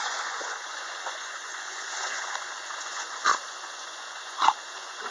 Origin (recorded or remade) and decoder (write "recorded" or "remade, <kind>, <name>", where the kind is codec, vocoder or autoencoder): remade, vocoder, Vocos